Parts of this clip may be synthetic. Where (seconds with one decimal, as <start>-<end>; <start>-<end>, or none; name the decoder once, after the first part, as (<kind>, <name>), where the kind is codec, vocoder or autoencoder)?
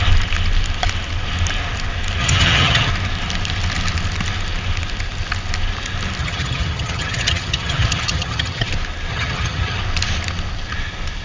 2.2-2.9 (vocoder, HiFi-GAN); 6.2-8.7; 9.1-9.8